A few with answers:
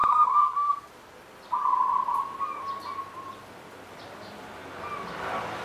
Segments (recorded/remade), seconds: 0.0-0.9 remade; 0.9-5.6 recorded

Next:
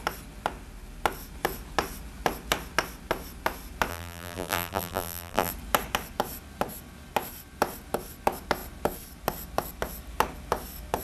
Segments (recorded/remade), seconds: 0.0-3.9 recorded; 3.9-5.5 remade; 5.5-11.0 recorded

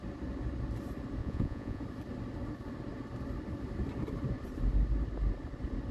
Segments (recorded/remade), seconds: 0.0-1.2 recorded; 1.2-1.8 remade; 1.8-5.9 recorded